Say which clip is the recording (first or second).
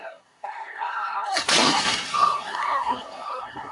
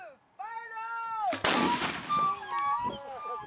second